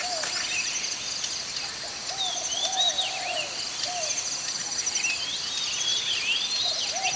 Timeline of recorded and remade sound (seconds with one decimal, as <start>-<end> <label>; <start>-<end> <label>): 0.0-7.2 recorded